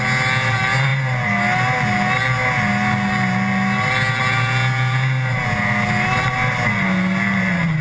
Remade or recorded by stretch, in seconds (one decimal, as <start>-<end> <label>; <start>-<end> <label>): 0.0-7.8 recorded